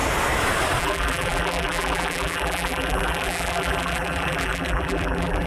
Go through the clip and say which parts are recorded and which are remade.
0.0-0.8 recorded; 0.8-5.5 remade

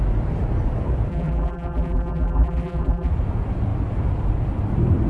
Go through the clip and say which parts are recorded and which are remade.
0.0-1.1 recorded; 1.1-3.1 remade; 3.1-5.1 recorded

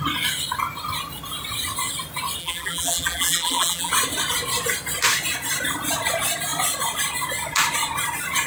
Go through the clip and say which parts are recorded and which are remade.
0.0-2.4 recorded; 2.4-3.9 remade; 3.9-8.5 recorded

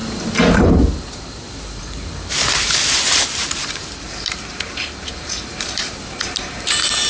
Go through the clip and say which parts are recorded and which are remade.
0.0-0.6 recorded; 0.6-7.1 remade

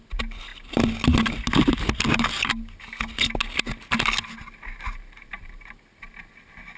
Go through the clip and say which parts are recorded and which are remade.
0.0-6.8 recorded

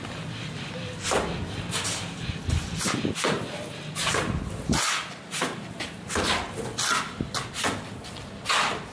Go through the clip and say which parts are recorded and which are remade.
0.0-4.0 recorded; 4.0-6.6 remade; 6.6-8.9 recorded

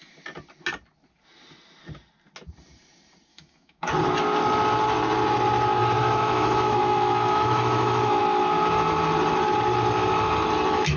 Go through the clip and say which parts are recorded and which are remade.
0.0-3.3 recorded; 3.3-3.9 remade; 3.9-6.0 recorded; 6.0-8.2 remade; 8.2-11.0 recorded